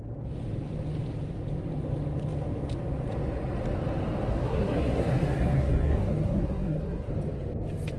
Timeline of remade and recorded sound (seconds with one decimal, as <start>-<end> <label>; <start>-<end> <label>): 0.0-4.3 recorded; 4.3-7.1 remade; 7.1-8.0 recorded

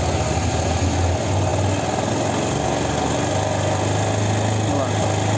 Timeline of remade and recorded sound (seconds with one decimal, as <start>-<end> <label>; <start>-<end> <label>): 0.0-5.4 recorded